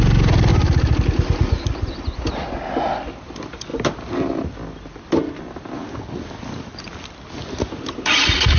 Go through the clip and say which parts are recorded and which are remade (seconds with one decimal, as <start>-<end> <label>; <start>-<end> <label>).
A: 0.0-8.6 recorded